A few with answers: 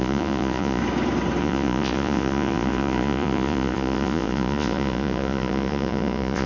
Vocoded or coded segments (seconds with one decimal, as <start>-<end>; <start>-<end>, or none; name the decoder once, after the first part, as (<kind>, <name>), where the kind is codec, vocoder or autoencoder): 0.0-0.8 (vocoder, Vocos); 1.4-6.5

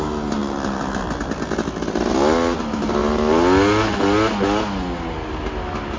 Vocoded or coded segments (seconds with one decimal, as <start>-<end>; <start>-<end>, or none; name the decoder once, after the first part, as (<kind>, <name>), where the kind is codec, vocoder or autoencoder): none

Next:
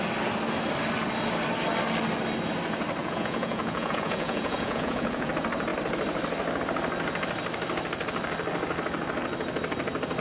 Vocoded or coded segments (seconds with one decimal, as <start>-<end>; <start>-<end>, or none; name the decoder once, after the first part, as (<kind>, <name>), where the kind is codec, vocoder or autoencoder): 3.0-5.3 (vocoder, Vocos)

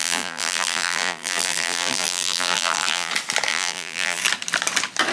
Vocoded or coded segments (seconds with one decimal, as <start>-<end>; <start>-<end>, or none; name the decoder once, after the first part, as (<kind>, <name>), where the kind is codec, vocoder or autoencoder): 0.0-3.1 (vocoder, BigVGAN v2); 3.5-4.2

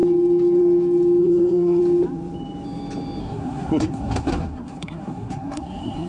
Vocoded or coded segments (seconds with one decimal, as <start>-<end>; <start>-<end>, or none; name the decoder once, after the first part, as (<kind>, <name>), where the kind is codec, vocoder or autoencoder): 1.2-1.8 (codec, SNAC); 3.2-6.1

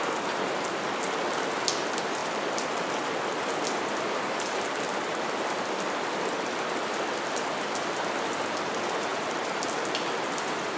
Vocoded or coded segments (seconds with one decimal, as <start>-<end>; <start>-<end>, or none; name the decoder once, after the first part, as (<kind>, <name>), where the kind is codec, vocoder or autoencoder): 2.2-7.1 (vocoder, BigVGAN v2); 9.1-9.9